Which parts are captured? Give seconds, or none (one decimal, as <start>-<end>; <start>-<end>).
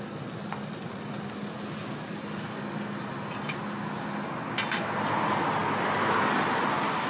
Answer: 0.0-7.1